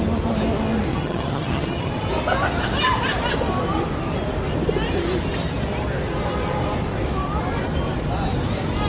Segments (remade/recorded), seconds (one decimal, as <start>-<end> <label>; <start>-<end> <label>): 0.0-0.9 recorded; 0.9-1.9 remade; 1.9-8.9 recorded